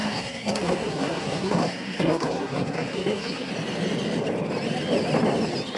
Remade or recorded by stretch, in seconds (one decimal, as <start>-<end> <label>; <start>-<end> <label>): 0.0-3.5 remade; 3.5-5.8 recorded